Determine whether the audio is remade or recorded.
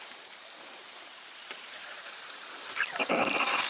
remade